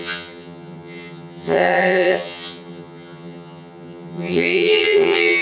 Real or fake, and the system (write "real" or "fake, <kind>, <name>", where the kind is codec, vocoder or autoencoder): fake, vocoder, HiFi-GAN